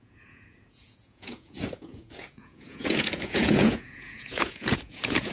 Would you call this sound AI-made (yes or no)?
yes